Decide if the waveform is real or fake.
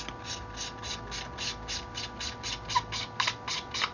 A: real